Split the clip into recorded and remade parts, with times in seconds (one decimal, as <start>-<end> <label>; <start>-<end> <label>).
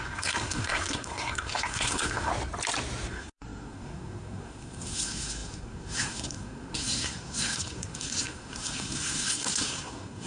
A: 0.0-2.3 remade; 2.3-3.1 recorded; 3.1-10.3 remade